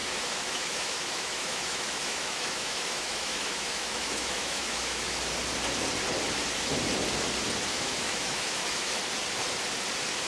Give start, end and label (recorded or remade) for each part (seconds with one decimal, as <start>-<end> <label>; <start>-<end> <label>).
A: 0.0-5.2 remade; 5.2-7.7 recorded; 7.7-9.0 remade; 9.0-10.3 recorded